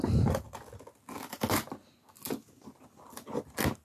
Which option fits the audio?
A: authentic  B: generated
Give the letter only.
A